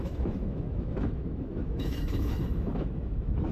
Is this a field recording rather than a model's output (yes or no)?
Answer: no